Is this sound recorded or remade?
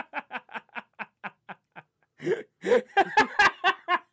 recorded